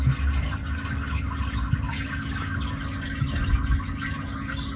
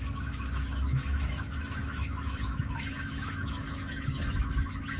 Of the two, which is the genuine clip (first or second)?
first